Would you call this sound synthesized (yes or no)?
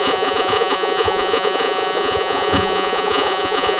yes